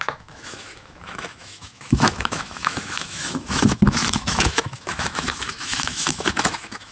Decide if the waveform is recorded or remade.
remade